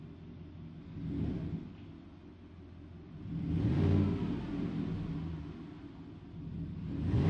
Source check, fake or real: real